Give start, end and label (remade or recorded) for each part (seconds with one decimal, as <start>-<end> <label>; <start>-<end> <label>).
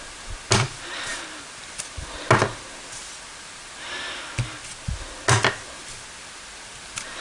0.0-7.2 recorded